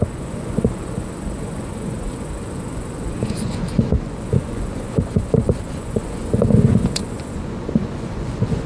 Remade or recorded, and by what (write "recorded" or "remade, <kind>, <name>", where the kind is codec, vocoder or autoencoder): remade, vocoder, Vocos